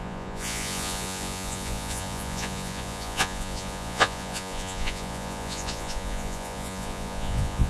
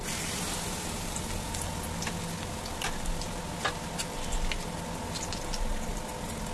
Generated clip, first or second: first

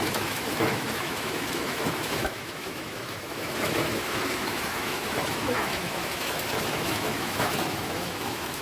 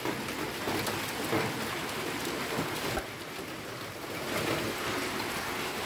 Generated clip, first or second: first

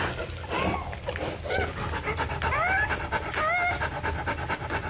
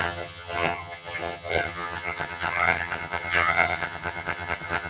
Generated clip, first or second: second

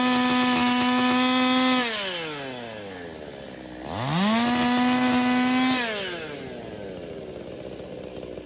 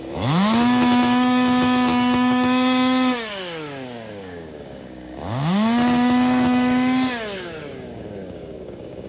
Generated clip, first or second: second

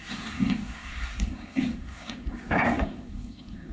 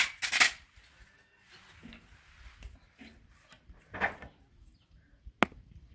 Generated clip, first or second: first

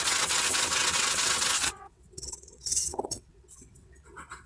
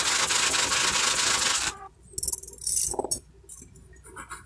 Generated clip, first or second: first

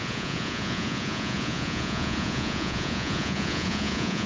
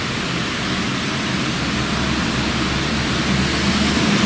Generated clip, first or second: first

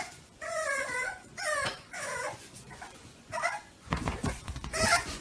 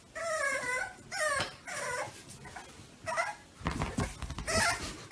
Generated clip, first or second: first